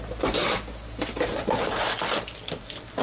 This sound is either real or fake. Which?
real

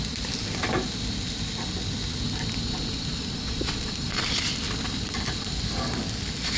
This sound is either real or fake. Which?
real